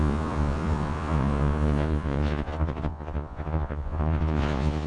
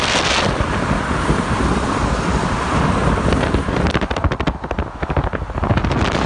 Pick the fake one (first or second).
first